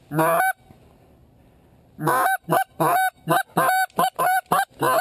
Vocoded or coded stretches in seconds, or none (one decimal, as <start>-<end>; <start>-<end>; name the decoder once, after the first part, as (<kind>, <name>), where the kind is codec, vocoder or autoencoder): none